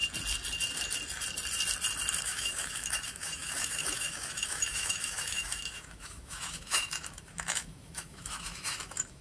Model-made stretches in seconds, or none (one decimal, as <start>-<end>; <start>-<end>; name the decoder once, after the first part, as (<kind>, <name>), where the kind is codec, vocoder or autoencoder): 2.2-9.2 (autoencoder, DAC-VAE)